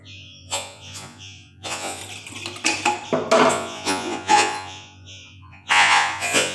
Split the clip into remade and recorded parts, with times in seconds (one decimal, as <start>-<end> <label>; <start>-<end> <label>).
0.0-2.0 remade; 2.0-3.5 recorded; 3.5-6.5 remade